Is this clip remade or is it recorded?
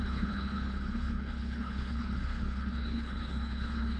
remade